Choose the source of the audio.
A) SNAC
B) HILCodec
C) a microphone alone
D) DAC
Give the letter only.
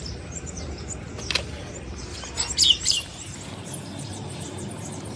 C